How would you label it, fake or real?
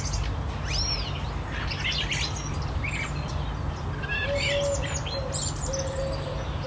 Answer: real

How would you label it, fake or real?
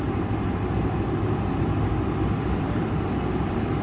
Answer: real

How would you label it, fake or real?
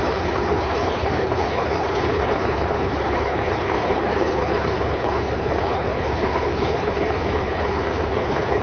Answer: fake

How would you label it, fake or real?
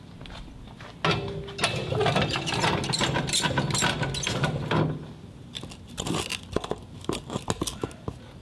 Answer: real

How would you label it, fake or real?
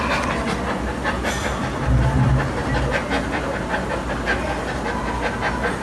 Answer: real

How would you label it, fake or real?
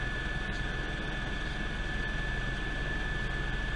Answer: real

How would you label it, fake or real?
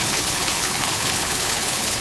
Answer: fake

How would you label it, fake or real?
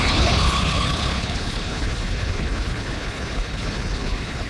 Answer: fake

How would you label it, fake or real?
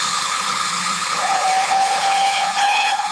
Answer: fake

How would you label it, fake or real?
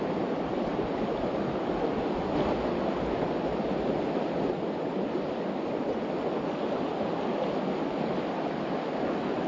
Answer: real